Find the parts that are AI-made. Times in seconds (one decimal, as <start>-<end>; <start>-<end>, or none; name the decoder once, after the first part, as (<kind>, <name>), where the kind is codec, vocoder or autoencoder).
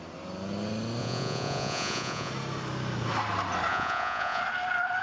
1.0-2.3 (vocoder, Vocos); 3.7-4.4